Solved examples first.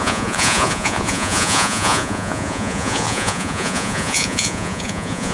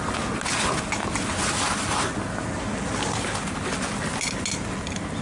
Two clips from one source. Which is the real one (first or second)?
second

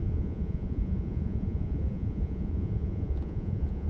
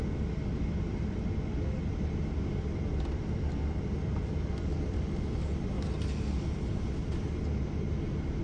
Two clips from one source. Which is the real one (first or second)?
second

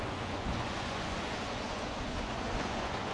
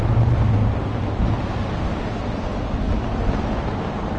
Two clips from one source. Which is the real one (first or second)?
second